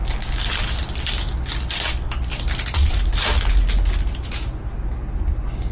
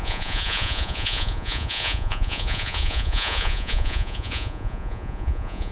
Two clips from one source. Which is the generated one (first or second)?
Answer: second